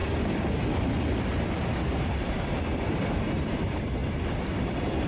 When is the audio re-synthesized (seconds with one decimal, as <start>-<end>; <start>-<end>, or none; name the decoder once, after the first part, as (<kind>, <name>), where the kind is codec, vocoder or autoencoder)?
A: none